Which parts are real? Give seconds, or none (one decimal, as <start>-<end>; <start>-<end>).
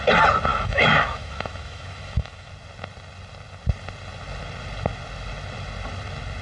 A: 0.0-0.5; 2.5-6.4